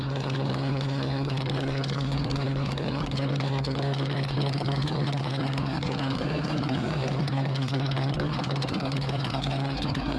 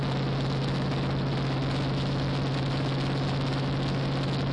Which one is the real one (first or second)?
second